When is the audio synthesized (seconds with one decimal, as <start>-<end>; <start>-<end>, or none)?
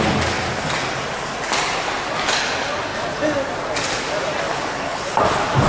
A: 4.5-5.1